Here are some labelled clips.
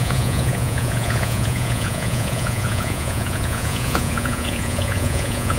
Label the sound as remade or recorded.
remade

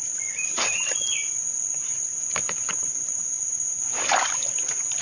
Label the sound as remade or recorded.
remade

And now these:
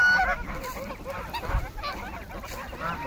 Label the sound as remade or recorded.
recorded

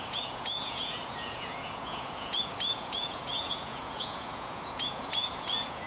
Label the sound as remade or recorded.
remade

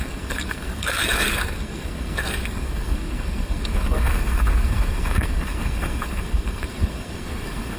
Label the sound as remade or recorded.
remade